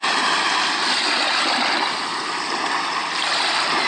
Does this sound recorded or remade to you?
recorded